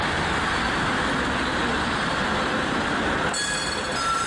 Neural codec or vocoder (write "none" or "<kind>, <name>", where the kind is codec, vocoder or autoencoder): none